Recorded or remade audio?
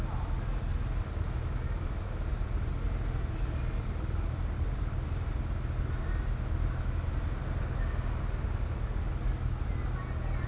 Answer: recorded